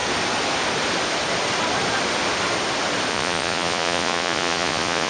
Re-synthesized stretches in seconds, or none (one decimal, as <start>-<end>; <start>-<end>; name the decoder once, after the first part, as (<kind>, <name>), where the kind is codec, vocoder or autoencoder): 3.1-5.1 (vocoder, Vocos)